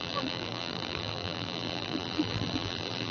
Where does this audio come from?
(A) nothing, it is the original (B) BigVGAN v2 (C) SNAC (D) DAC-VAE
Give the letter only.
B